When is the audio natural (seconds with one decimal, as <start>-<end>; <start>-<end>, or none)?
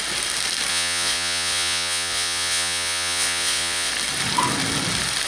0.0-0.7; 3.9-5.3